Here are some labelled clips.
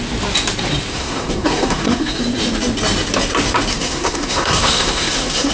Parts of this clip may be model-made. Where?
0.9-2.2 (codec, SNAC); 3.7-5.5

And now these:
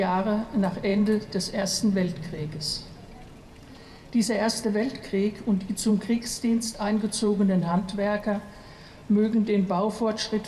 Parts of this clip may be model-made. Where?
0.9-4.1 (vocoder, Vocos); 5.9-7.8

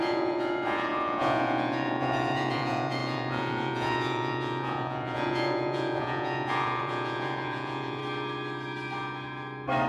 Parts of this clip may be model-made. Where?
0.0-8.0 (vocoder, Vocos)

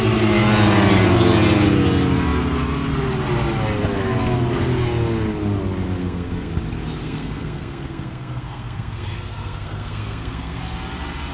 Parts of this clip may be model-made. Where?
6.0-6.5 (codec, SNAC); 7.0-10.6